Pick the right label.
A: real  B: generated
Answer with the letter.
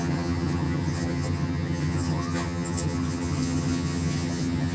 B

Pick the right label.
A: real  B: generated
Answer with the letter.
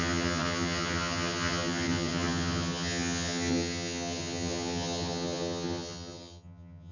B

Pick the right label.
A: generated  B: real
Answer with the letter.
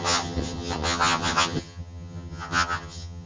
A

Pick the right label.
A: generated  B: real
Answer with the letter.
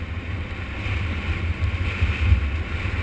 B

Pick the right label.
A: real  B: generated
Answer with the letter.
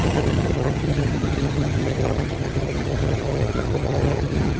B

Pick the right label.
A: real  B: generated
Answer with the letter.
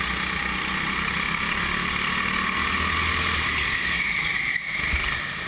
A